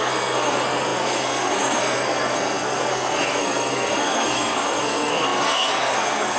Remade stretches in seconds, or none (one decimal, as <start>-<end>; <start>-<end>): 0.0-6.4

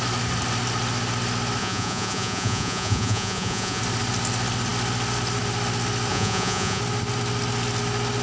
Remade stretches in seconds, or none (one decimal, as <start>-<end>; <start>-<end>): 1.6-3.8; 6.1-6.8

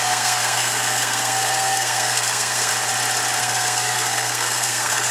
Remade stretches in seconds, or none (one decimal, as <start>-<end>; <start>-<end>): 0.0-2.7; 3.4-5.1